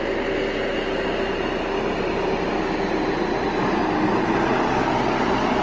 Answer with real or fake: real